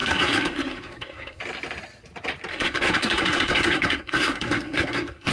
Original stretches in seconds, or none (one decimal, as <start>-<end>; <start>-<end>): 1.4-2.5